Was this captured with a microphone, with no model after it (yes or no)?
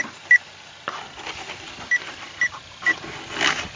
yes